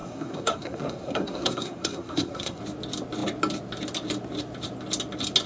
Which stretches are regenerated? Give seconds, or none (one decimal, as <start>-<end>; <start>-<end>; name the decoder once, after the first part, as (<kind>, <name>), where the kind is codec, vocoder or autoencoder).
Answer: 0.0-2.6 (codec, SNAC)

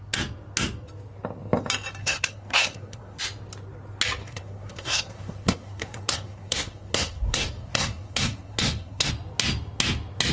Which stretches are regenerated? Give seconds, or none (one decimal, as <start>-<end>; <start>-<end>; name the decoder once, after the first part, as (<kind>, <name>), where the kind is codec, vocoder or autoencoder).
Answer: 2.0-3.2 (codec, SNAC); 4.2-9.1

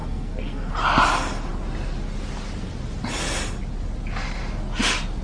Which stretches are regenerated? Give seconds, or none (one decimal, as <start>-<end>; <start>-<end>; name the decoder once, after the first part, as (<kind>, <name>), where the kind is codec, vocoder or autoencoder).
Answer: 0.0-0.7 (codec, SNAC)

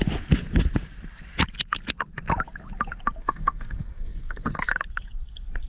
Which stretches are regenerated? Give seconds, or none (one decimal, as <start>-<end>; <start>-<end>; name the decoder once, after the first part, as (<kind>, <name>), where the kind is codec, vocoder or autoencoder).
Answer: 3.2-4.7 (codec, SNAC)

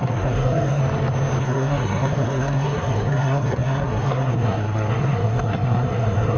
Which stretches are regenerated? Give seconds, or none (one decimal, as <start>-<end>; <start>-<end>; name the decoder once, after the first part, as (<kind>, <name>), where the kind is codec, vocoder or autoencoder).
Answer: 0.0-0.8 (codec, SNAC); 1.4-6.4

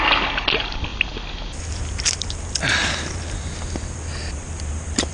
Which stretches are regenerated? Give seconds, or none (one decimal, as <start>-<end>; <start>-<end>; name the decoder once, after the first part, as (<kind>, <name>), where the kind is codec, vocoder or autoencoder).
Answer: none

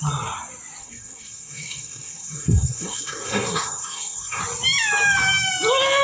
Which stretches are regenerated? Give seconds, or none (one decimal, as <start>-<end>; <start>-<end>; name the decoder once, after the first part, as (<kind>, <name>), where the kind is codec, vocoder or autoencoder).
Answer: 0.8-4.4 (codec, SNAC)